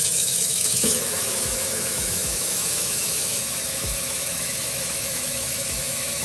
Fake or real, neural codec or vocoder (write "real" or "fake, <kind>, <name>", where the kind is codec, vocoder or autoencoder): fake, autoencoder, DAC-VAE